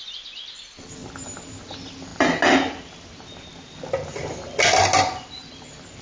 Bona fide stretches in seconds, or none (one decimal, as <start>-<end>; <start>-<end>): 0.0-6.0